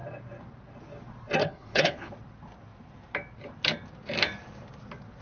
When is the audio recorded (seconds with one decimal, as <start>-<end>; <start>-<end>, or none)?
0.0-1.4; 2.1-5.2